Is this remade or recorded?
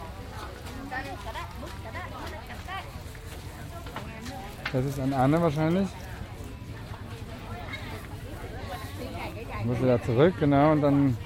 recorded